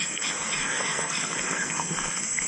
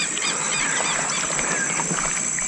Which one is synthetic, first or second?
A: first